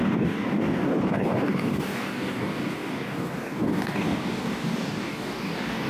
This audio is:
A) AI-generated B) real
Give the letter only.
A